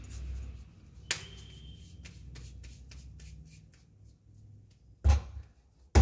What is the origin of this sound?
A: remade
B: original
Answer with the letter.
B